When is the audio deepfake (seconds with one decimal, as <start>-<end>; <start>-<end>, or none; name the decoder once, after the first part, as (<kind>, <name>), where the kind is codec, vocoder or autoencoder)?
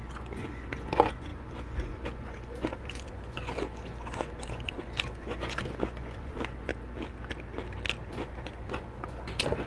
0.0-6.7 (vocoder, Vocos); 8.1-9.7